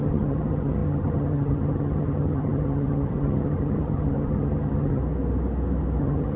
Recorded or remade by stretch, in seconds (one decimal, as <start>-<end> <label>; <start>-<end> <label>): 0.0-5.0 remade; 5.0-6.0 recorded; 6.0-6.4 remade